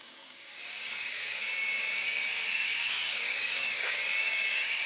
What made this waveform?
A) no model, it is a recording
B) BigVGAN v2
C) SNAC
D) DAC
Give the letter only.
D